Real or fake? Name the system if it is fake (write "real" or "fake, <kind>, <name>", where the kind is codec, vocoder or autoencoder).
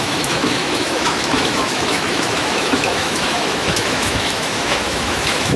fake, autoencoder, DAC-VAE